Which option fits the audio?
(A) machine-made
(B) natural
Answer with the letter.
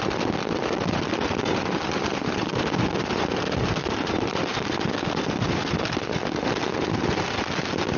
A